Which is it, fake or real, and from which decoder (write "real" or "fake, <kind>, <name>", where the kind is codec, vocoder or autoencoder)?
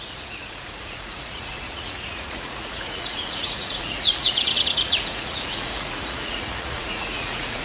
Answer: fake, vocoder, Vocos